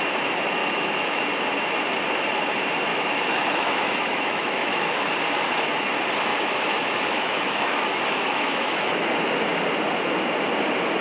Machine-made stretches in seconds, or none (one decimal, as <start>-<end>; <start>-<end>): 0.6-1.2; 2.9-5.1; 6.3-8.9